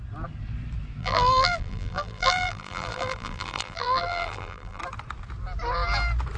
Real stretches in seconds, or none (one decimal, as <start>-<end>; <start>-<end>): 0.0-1.0; 4.8-6.4